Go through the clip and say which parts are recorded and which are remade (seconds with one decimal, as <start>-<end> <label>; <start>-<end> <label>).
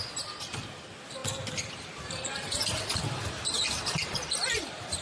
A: 0.0-1.2 remade; 1.2-1.9 recorded; 1.9-5.0 remade